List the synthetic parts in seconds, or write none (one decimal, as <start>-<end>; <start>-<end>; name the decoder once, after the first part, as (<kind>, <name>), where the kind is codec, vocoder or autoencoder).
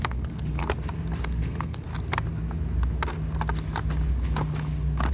0.0-0.6 (codec, SNAC); 1.2-1.9